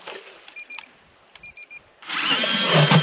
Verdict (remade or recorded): recorded